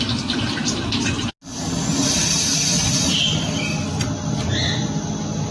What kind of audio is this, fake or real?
real